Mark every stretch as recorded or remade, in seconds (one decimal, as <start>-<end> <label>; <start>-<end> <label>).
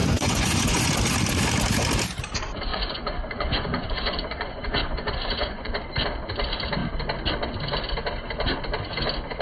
0.0-0.9 remade; 0.9-2.7 recorded; 2.7-5.8 remade; 5.8-9.4 recorded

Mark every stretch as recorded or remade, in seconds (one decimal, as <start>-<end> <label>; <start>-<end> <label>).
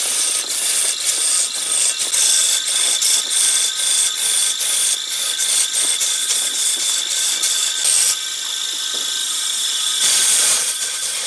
0.0-6.2 recorded; 6.2-6.9 remade; 6.9-9.2 recorded; 9.2-11.3 remade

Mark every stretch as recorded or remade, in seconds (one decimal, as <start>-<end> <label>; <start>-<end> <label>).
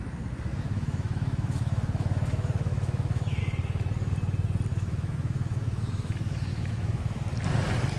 0.0-0.5 recorded; 0.5-3.4 remade; 3.4-4.7 recorded; 4.7-7.2 remade; 7.2-8.0 recorded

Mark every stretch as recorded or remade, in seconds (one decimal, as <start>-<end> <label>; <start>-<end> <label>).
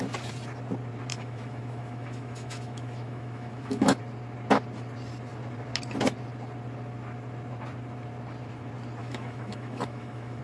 0.0-1.1 recorded; 1.1-4.0 remade; 4.0-9.0 recorded; 9.0-10.4 remade